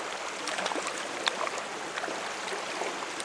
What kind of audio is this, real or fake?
real